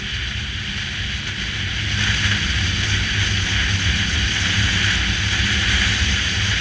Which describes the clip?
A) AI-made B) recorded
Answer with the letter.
B